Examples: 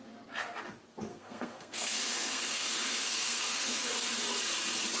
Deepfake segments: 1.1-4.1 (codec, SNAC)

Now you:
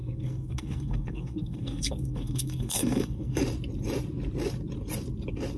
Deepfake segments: 0.0-3.4 (codec, SNAC)

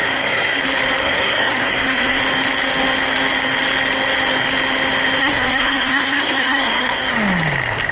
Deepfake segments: 0.0-0.6 (codec, SNAC); 1.0-2.2; 5.2-7.0

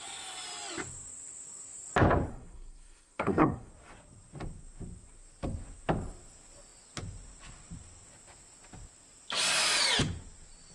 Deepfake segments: 2.3-3.7 (codec, SNAC)

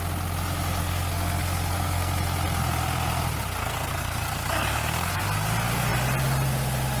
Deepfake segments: 0.8-2.1 (codec, SNAC); 3.6-5.2